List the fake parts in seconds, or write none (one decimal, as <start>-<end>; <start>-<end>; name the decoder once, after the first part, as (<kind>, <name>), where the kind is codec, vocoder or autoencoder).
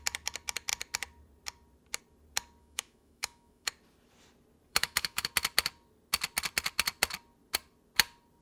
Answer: 2.6-3.7 (autoencoder, DAC-VAE); 4.7-5.3